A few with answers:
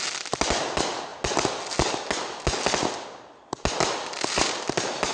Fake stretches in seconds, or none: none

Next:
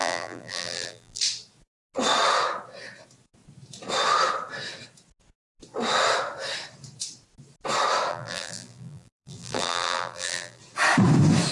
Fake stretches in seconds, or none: 0.0-1.2 (vocoder, BigVGAN v2); 8.1-10.6

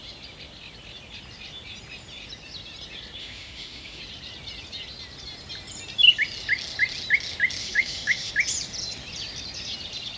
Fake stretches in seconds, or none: 3.2-4.0 (autoencoder, DAC-VAE); 7.6-8.3

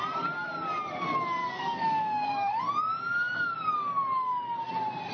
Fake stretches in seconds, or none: 1.4-2.6 (codec, DAC)

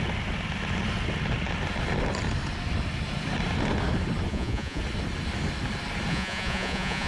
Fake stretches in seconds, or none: 4.3-4.8 (vocoder, Vocos); 6.1-7.1